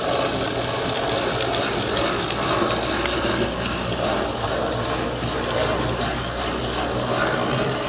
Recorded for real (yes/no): yes